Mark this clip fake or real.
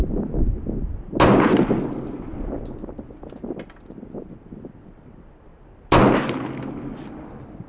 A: real